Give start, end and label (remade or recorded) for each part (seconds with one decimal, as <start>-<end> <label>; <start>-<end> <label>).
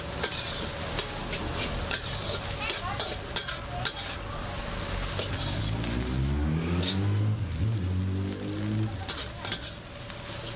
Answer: 0.0-10.6 recorded